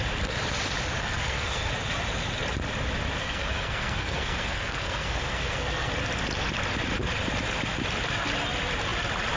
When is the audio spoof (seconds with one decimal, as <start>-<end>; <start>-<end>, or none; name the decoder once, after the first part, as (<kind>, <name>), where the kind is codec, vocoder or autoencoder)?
1.0-1.7 (codec, SNAC); 3.2-5.9

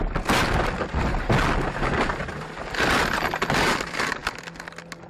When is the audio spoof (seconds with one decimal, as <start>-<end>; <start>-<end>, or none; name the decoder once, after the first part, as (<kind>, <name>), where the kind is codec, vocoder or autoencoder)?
none

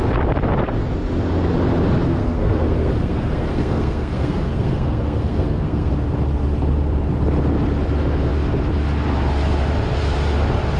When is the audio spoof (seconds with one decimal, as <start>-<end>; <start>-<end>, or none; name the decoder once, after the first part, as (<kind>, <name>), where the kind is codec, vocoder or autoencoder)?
2.1-5.9 (codec, SNAC)

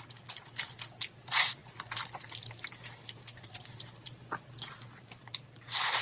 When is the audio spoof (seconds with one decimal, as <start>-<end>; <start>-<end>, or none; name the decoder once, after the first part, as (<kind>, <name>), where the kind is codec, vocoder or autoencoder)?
none

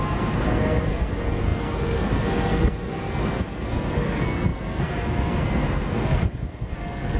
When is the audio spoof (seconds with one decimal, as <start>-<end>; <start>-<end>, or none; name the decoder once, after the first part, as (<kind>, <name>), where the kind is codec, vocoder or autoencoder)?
0.0-7.2 (codec, SNAC)

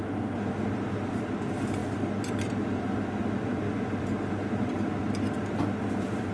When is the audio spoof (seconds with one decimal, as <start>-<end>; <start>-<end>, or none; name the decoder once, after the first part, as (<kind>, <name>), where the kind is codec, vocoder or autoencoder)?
none

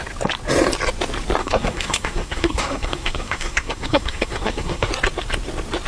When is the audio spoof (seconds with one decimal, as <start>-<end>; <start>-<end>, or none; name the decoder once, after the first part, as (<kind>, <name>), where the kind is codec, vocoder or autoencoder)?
1.4-4.9 (codec, SNAC)